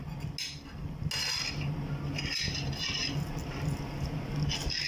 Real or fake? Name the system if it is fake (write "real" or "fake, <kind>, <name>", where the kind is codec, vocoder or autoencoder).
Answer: real